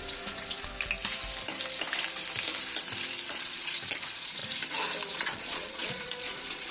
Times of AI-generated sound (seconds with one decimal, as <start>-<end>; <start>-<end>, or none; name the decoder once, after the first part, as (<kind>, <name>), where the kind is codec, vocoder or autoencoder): 0.0-0.7 (vocoder, Vocos); 3.3-4.4; 5.1-6.7